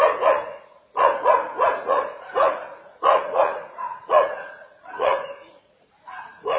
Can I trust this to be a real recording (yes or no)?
no